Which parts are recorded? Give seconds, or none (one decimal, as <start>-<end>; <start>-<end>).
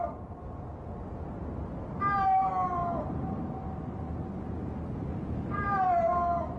0.0-6.6